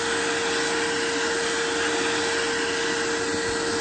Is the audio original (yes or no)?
yes